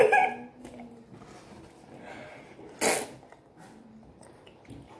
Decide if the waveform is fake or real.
real